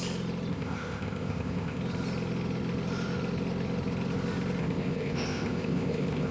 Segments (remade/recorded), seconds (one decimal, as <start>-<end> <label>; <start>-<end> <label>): 0.0-0.5 recorded; 0.5-1.8 remade; 1.8-4.6 recorded; 4.6-6.3 remade

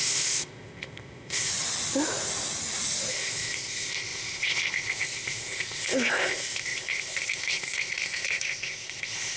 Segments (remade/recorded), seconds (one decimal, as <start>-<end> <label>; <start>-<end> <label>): 0.0-1.5 remade; 1.5-3.1 recorded; 3.1-9.4 remade

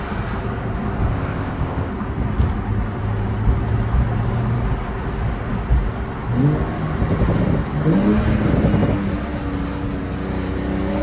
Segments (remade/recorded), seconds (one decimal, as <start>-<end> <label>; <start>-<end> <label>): 0.0-1.1 recorded; 1.1-1.9 remade; 1.9-11.0 recorded